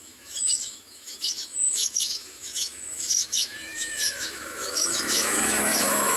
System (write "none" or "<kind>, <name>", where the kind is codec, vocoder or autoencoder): autoencoder, DAC-VAE